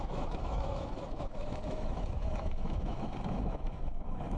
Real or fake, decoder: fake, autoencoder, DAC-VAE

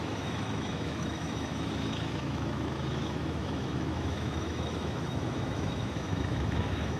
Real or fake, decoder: fake, autoencoder, DAC-VAE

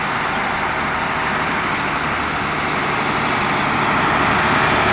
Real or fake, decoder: real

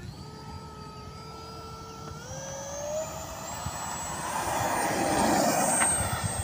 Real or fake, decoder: real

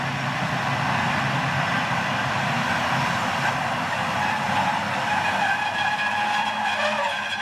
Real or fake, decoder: real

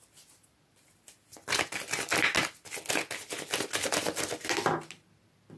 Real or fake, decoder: real